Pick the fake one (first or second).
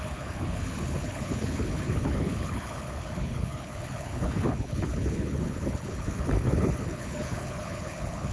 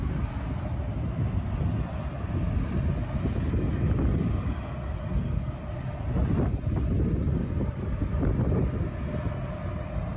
first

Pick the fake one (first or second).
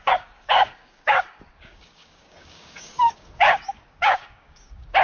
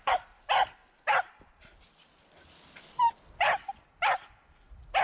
first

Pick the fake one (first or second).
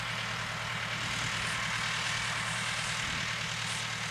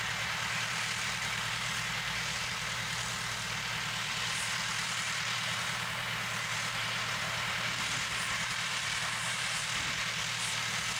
second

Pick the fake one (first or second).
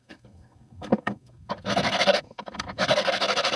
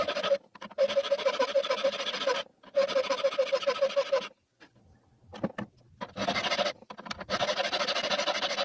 first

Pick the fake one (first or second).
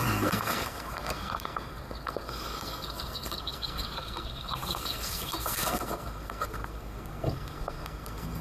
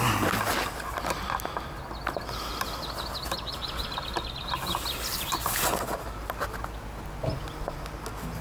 first